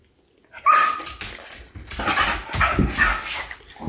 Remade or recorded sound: recorded